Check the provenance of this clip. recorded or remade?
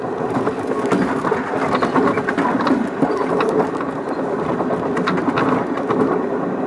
recorded